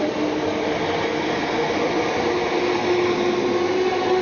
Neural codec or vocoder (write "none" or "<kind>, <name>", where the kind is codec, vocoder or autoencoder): none